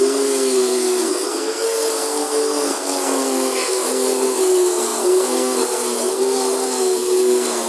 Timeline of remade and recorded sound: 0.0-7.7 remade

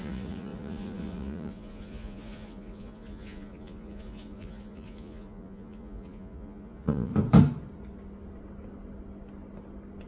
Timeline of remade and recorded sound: 0.0-7.1 remade; 7.1-10.1 recorded

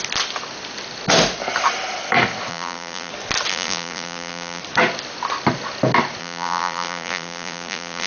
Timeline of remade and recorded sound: 0.0-2.5 recorded; 2.5-3.1 remade; 3.1-3.5 recorded; 3.5-4.6 remade; 4.6-6.2 recorded; 6.2-8.1 remade